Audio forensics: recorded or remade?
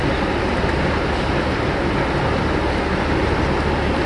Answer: recorded